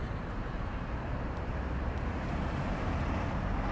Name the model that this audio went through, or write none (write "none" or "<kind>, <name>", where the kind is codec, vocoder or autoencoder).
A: vocoder, BigVGAN v2